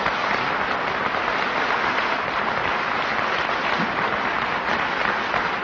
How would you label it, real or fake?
real